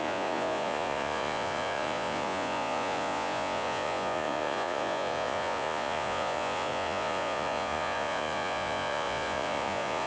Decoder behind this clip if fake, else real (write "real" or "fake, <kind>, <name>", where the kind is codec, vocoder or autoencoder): fake, vocoder, Vocos